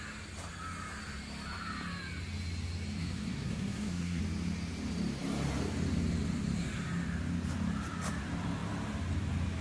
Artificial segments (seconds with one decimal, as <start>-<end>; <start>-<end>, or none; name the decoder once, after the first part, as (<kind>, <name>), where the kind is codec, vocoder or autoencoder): 3.0-4.2 (codec, SNAC)